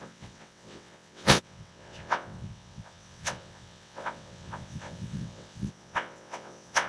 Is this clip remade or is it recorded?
remade